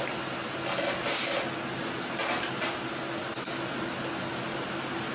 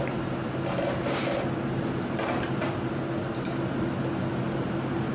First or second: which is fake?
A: second